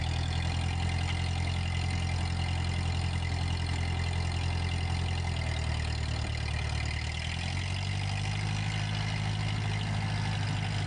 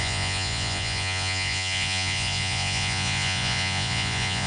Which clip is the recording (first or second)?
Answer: first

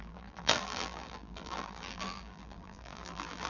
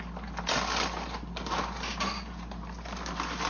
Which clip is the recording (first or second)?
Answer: second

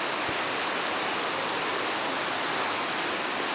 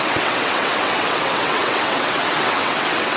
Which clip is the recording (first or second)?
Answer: first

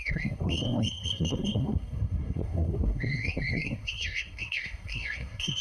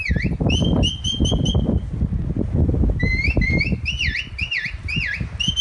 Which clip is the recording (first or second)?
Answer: second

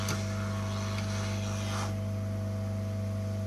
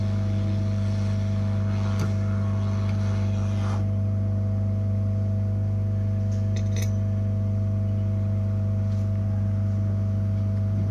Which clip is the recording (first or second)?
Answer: first